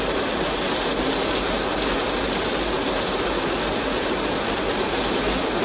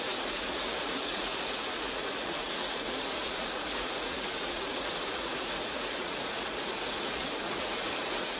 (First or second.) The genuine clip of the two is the first